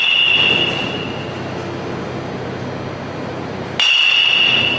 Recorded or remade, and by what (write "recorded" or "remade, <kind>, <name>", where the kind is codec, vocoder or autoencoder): recorded